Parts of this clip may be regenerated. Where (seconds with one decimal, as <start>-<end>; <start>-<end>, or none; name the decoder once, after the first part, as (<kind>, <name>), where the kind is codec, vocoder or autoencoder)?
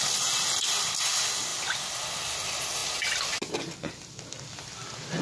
none